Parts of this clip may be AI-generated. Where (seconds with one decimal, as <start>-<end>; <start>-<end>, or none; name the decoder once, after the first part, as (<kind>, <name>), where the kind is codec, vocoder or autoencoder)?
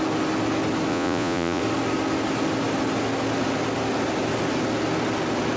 0.9-1.6 (vocoder, Vocos)